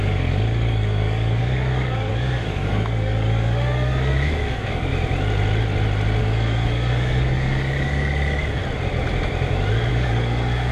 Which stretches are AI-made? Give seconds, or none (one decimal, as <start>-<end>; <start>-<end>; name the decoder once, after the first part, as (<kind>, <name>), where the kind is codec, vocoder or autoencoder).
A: 0.0-4.9 (codec, DAC); 6.2-8.6; 9.9-10.7